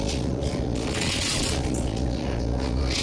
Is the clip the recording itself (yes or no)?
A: no